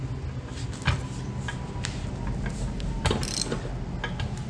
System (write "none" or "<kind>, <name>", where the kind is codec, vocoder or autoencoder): none